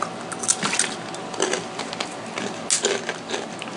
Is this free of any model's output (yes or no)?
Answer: yes